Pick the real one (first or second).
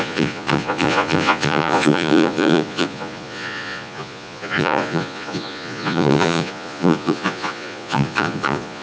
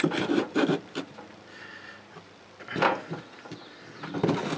second